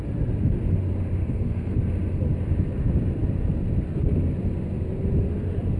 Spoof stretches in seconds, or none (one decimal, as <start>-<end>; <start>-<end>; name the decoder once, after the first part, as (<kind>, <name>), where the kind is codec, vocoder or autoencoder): 1.2-1.8 (codec, SNAC)